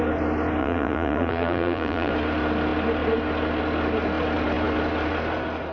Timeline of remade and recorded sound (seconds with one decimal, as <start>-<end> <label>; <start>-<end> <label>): 0.0-0.6 recorded; 0.6-2.1 remade; 2.1-5.7 recorded